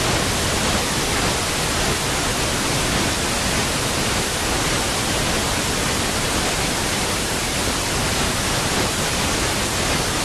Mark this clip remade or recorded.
recorded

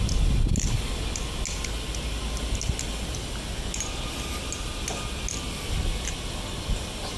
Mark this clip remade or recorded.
recorded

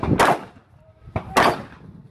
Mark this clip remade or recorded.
recorded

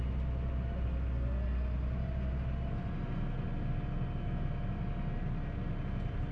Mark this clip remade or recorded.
recorded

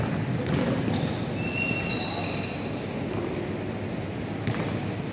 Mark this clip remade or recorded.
recorded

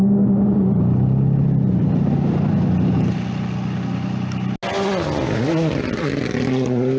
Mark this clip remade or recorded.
recorded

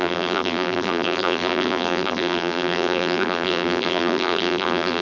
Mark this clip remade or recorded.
remade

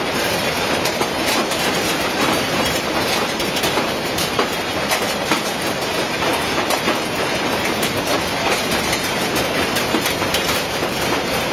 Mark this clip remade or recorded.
remade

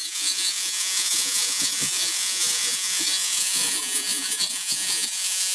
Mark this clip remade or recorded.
remade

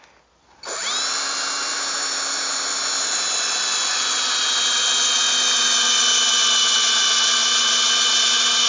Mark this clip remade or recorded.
recorded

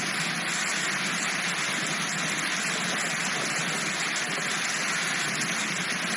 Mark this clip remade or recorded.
recorded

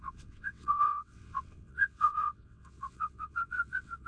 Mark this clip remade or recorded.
remade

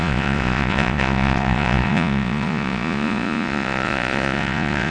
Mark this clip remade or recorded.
remade